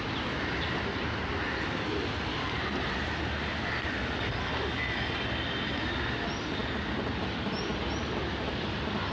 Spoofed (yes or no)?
no